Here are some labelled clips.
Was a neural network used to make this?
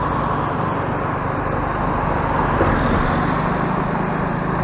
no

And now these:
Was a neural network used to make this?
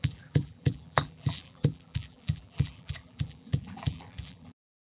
yes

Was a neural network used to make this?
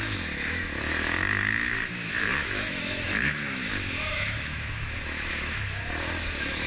yes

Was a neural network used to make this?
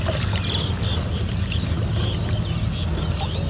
no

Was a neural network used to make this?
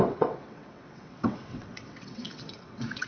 yes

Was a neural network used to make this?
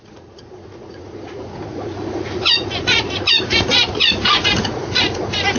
yes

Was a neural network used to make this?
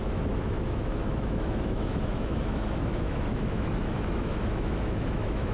yes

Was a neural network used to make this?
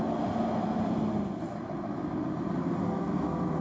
no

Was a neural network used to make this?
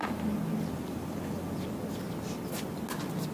no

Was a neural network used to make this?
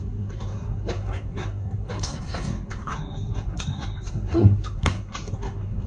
yes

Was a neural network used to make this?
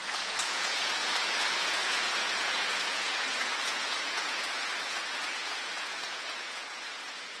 yes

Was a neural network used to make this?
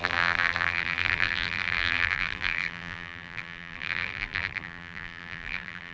yes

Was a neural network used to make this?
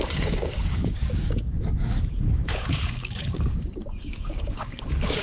yes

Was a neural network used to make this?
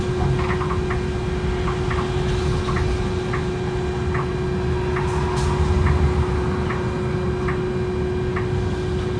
no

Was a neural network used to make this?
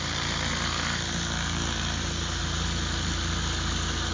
no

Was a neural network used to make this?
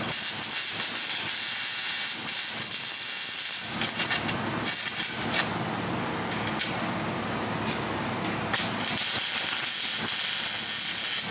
no